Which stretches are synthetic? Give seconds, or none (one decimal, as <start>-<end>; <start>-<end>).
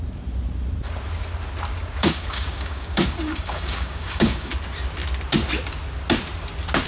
2.0-4.5